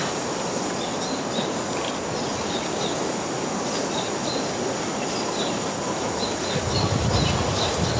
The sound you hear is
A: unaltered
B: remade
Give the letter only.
A